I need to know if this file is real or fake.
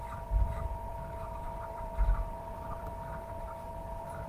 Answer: fake